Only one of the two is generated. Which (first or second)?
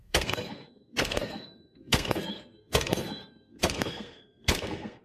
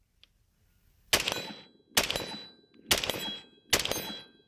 first